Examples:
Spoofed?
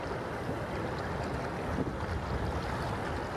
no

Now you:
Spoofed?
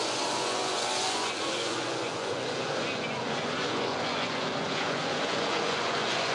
yes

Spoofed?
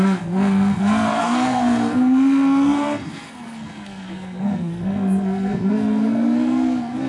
yes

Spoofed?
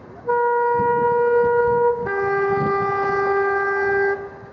no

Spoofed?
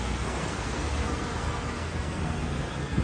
yes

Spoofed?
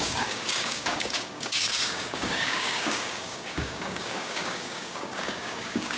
yes